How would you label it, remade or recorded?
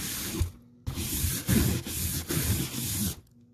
recorded